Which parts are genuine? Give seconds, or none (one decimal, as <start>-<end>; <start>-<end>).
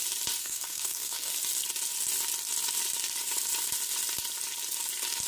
0.0-0.4; 1.3-5.3